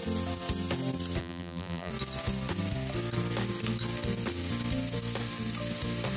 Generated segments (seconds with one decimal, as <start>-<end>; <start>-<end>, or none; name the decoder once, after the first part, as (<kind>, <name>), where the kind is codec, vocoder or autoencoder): 1.2-1.9 (vocoder, BigVGAN v2)